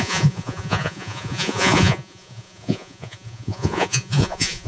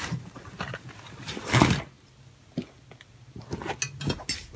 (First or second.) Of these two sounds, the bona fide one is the second